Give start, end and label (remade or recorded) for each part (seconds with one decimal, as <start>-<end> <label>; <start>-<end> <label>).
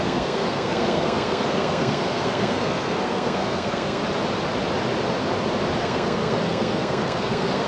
0.0-4.0 remade; 4.0-5.8 recorded; 5.8-7.7 remade